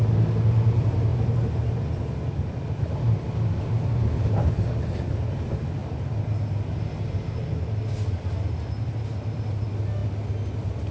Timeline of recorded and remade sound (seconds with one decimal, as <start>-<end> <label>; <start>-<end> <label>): 0.0-10.9 recorded